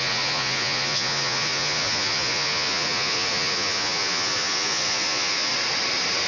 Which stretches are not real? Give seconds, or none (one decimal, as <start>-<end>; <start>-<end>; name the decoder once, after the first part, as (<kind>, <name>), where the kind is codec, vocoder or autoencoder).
0.0-5.5 (vocoder, Vocos)